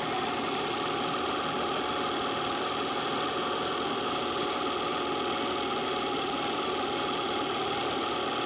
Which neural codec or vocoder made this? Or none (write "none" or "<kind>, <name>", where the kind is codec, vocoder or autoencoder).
none